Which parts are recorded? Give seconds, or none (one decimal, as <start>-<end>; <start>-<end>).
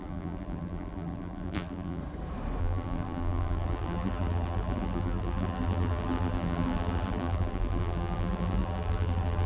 2.0-2.6